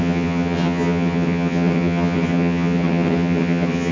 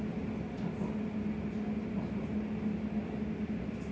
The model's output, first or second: first